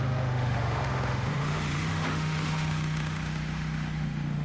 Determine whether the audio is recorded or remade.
remade